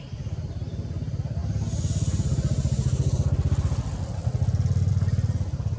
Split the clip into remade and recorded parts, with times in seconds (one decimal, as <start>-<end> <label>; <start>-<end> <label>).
0.0-5.8 recorded

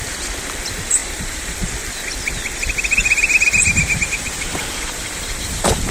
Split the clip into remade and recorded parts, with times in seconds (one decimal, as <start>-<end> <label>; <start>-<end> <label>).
0.0-1.0 recorded; 1.0-1.7 remade; 1.7-3.0 recorded; 3.0-5.9 remade

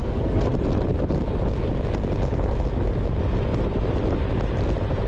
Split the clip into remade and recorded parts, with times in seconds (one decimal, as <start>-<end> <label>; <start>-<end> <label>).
0.0-0.5 remade; 0.5-5.1 recorded

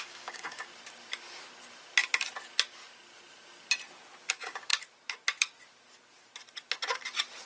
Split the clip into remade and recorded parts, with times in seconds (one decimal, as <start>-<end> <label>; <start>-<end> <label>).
0.0-0.7 remade; 0.7-4.3 recorded; 4.3-4.7 remade; 4.7-7.5 recorded